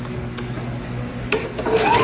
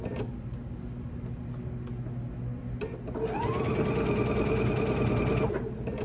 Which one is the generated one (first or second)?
first